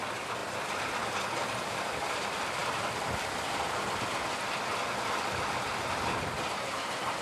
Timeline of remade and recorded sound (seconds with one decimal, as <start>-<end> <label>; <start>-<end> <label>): 0.0-0.4 remade; 0.4-1.6 recorded; 1.6-2.6 remade; 2.6-6.5 recorded; 6.5-7.2 remade